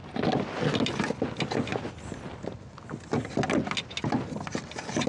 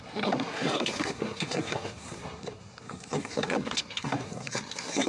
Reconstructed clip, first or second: second